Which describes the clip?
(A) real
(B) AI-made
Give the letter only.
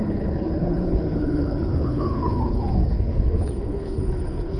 B